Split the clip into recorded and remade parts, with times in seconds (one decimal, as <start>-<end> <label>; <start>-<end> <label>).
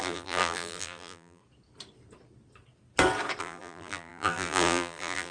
0.0-1.4 remade; 1.4-3.4 recorded; 3.4-5.3 remade